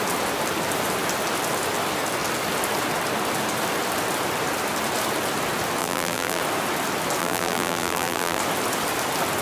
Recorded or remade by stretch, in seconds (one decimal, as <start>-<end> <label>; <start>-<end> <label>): 0.0-5.8 recorded; 5.8-6.4 remade; 6.4-7.2 recorded; 7.2-8.4 remade; 8.4-9.4 recorded